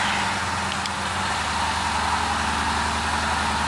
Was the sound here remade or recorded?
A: recorded